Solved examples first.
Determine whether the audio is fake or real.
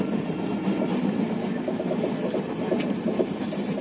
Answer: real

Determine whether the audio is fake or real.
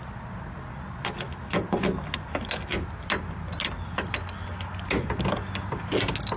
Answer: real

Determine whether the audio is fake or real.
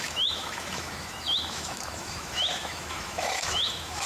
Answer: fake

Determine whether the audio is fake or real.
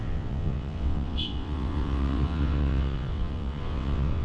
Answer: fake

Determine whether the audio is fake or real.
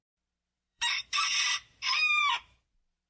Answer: fake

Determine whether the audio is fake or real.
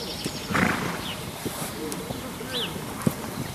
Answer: real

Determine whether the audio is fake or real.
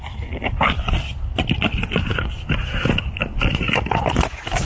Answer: real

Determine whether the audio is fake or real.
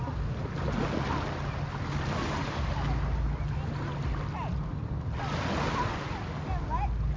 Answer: real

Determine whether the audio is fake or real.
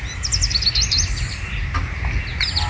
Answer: real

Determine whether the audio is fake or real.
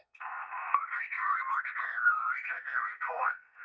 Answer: fake